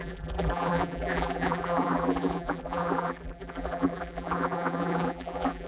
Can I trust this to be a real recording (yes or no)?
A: no